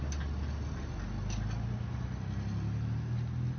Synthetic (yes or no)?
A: no